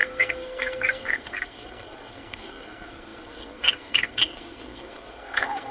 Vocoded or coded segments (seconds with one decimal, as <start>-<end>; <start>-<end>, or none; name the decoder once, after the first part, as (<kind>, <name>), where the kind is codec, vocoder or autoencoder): 0.0-5.7 (codec, SNAC)